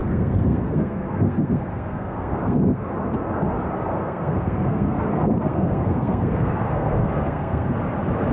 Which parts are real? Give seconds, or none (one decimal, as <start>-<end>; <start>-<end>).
2.9-3.9; 7.7-8.3

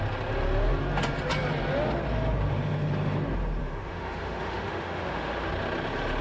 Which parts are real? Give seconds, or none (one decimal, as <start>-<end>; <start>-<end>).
0.0-3.6; 5.5-6.2

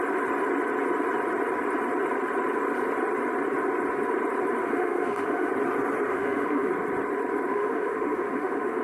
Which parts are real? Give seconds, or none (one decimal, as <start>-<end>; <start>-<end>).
0.0-4.6; 5.5-6.1; 6.7-7.5

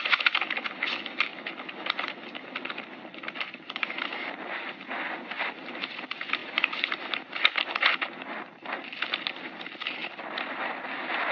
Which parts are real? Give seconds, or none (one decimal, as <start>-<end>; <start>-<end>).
0.0-1.3; 3.9-6.4; 7.0-10.0; 10.9-11.3

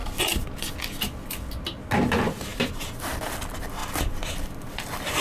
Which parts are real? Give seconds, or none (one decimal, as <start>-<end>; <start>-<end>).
0.0-2.5; 3.4-3.8